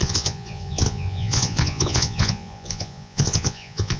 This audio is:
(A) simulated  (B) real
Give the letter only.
A